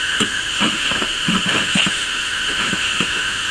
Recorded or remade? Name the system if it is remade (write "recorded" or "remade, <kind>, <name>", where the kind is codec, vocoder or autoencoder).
remade, autoencoder, DAC-VAE